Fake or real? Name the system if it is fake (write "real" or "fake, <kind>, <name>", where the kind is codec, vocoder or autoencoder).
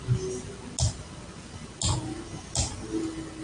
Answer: real